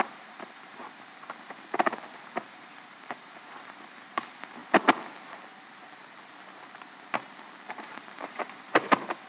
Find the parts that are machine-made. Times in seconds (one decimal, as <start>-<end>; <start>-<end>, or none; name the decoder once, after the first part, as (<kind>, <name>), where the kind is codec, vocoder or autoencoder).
0.0-0.8 (vocoder, BigVGAN v2); 2.2-4.6; 7.7-9.3